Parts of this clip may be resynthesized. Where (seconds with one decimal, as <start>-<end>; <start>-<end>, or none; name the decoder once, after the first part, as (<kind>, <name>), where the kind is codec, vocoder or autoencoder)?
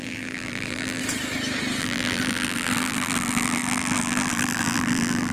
0.0-1.0 (vocoder, BigVGAN v2); 1.8-5.3